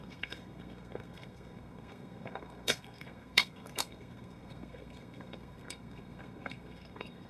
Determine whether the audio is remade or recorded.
remade